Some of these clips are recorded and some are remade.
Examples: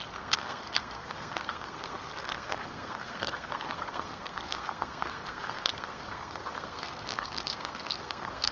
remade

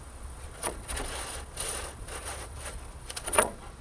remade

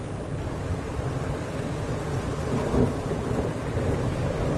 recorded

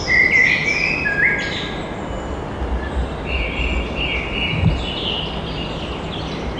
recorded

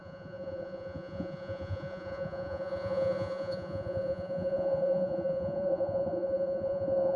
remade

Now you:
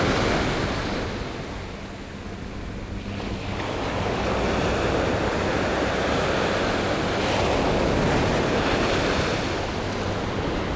recorded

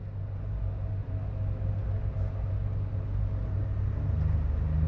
recorded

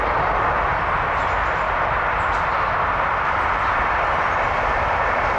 recorded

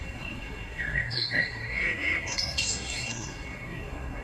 remade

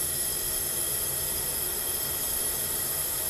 recorded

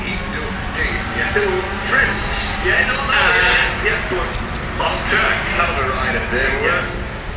recorded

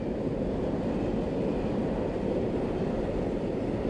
recorded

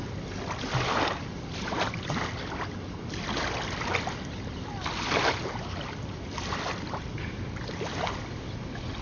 recorded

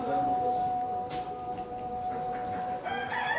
recorded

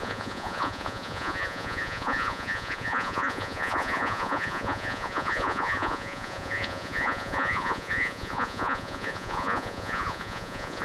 remade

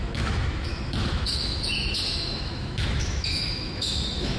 remade